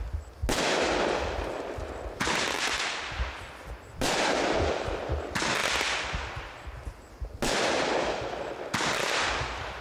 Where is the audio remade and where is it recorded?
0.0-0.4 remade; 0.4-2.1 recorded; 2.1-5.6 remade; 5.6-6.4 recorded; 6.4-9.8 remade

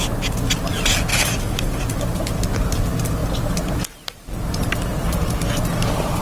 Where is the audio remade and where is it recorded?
0.0-1.1 recorded; 1.1-1.8 remade; 1.8-6.2 recorded

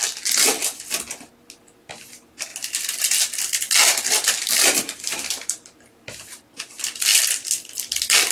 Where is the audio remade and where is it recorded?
0.0-3.8 recorded; 3.8-6.4 remade; 6.4-8.3 recorded